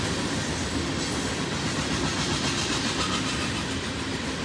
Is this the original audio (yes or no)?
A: yes